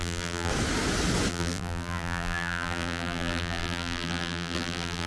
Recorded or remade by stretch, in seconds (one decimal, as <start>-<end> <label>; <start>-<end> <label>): 0.0-0.5 remade; 0.5-1.3 recorded; 1.3-5.1 remade